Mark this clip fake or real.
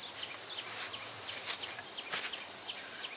real